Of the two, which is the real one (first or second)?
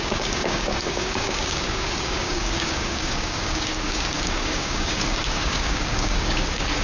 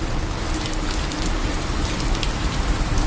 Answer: second